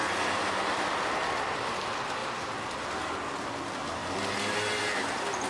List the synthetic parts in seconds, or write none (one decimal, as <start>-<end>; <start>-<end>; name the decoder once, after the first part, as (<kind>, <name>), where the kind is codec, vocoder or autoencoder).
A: none